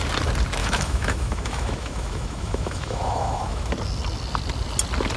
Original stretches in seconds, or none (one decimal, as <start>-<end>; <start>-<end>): 0.0-0.6; 3.7-5.2